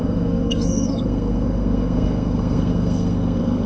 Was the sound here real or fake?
fake